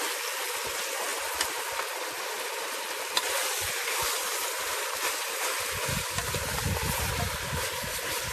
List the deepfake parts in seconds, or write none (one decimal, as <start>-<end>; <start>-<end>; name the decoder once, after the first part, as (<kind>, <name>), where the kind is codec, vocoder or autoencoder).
none